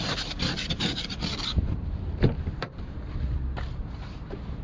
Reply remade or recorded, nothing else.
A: remade